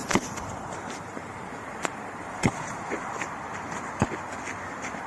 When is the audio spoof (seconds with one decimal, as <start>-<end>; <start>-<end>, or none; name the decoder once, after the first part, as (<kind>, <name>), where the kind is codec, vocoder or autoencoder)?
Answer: 0.0-3.1 (vocoder, BigVGAN v2)